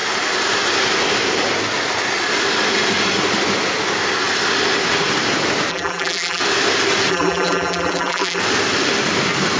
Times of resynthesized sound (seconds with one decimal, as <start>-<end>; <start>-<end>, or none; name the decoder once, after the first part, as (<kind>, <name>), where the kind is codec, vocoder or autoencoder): 5.7-6.4 (vocoder, BigVGAN v2); 7.1-8.4